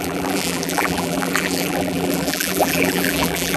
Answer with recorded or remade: remade